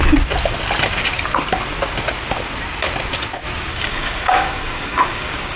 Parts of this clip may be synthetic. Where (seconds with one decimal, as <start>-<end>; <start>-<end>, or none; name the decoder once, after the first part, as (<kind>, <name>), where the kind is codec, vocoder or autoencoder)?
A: 3.7-5.6 (codec, DAC)